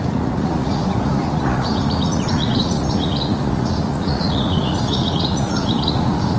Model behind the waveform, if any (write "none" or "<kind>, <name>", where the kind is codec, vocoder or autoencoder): vocoder, Vocos